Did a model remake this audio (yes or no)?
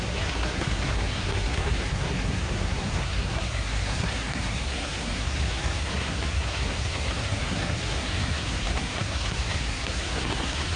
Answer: yes